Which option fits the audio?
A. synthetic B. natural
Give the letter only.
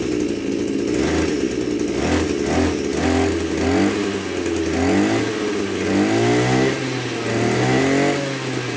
B